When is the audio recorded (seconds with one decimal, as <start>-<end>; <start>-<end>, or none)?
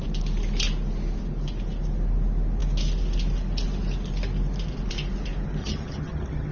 0.0-5.6